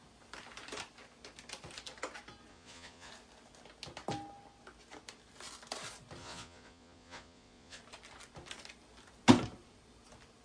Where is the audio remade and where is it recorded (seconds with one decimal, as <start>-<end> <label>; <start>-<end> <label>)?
0.0-2.5 recorded; 2.5-3.1 remade; 3.1-6.2 recorded; 6.2-7.8 remade; 7.8-10.4 recorded